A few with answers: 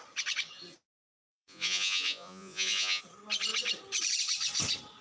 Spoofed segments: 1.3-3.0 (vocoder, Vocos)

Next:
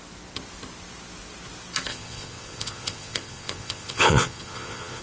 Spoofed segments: 1.9-5.0 (vocoder, Vocos)

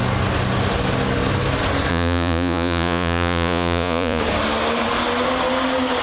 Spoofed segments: 1.9-4.2 (vocoder, Vocos)

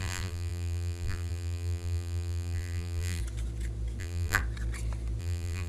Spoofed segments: 0.0-3.2 (vocoder, BigVGAN v2); 4.0-4.4; 5.2-5.7

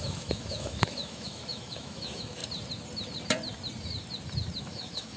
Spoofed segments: 0.0-2.4 (autoencoder, DAC-VAE); 4.6-5.2

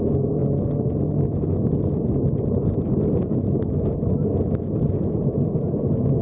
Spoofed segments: none

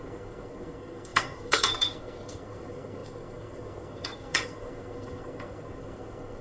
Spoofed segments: 0.0-6.4 (codec, SNAC)